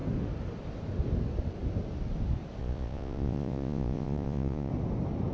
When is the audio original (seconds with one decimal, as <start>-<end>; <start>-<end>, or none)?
0.0-2.6; 4.7-5.3

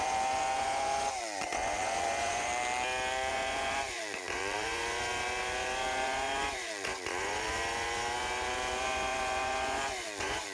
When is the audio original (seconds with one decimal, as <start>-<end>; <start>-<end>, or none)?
2.5-3.3

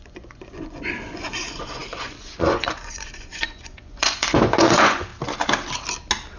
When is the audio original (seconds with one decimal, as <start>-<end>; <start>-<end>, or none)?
5.1-6.4

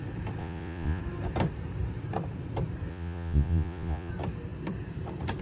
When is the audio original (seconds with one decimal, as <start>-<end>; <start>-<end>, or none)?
0.0-0.4; 1.0-2.9; 4.1-5.4

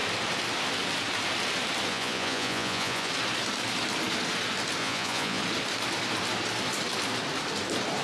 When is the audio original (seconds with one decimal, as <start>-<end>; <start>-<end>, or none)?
0.0-1.9; 3.1-4.8; 5.4-8.0

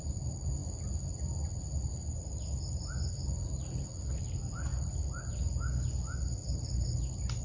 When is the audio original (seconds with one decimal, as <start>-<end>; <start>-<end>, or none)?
0.0-7.4

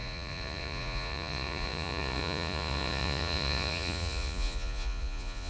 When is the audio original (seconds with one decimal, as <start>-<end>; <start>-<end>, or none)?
none